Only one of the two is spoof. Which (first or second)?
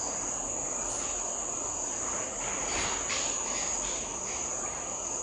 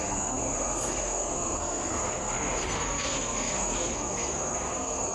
second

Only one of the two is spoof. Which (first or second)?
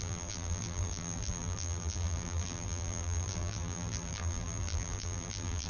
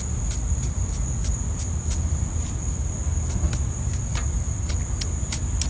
first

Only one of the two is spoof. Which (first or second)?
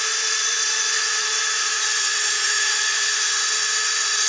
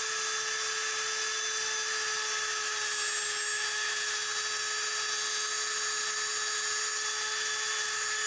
first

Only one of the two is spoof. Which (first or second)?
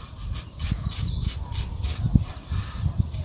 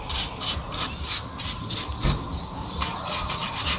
first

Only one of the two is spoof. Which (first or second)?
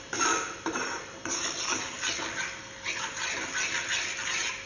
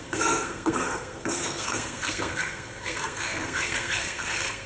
second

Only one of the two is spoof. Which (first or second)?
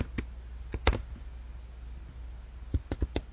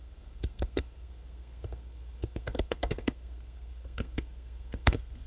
second